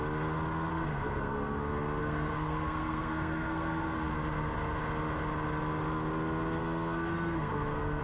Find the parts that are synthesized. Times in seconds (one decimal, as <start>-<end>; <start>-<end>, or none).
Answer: 0.7-1.6; 2.0-4.1; 6.6-8.0